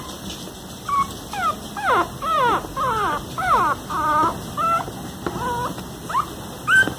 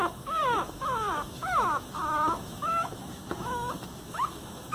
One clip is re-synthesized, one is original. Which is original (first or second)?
first